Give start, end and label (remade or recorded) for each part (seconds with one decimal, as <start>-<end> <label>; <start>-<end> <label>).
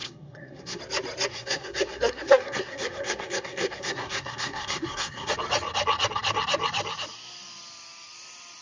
0.0-0.8 remade; 0.8-1.3 recorded; 1.3-5.3 remade; 5.3-8.6 recorded